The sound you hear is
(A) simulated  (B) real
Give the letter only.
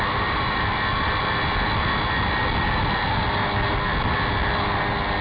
B